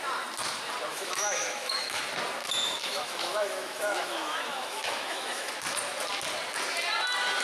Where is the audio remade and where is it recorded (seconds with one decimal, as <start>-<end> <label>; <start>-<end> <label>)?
0.0-0.9 recorded; 0.9-2.0 remade; 2.0-2.4 recorded; 2.4-5.5 remade; 5.5-7.4 recorded